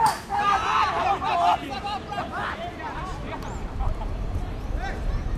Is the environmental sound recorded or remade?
remade